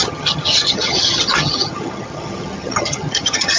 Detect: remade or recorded remade